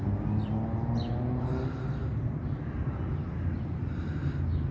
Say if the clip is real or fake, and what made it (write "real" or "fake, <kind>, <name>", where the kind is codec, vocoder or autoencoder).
real